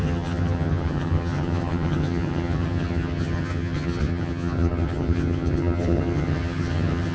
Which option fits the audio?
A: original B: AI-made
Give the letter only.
B